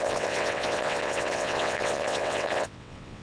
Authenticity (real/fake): fake